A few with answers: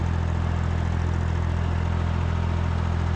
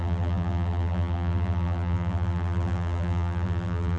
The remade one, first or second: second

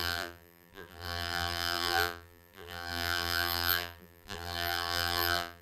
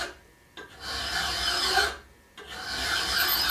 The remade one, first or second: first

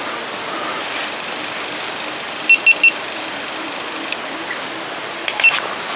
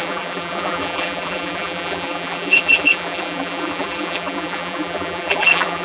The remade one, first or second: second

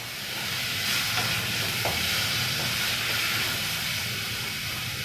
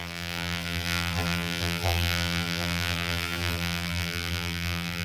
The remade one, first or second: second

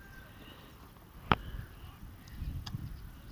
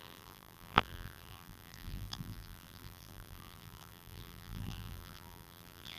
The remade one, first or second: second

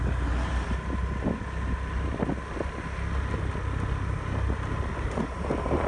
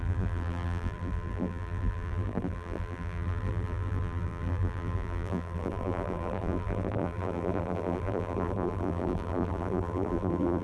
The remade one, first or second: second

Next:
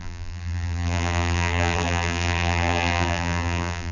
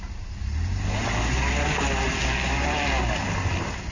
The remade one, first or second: first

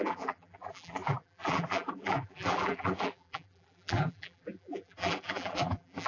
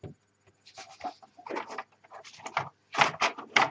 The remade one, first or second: first